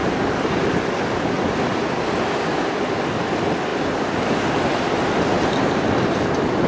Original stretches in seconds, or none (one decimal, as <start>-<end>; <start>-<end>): 1.9-3.7; 4.7-6.7

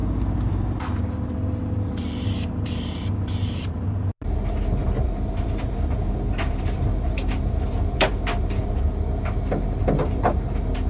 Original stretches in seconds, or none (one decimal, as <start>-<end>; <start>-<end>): 1.0-4.8; 8.7-10.9